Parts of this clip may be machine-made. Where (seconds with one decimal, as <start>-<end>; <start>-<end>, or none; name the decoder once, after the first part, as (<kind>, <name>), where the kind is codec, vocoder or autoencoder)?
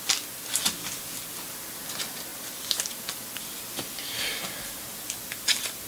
4.3-4.9 (vocoder, BigVGAN v2)